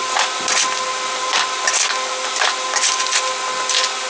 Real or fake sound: real